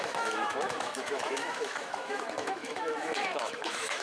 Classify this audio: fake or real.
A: fake